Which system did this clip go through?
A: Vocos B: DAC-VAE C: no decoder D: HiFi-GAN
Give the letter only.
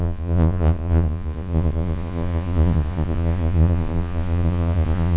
A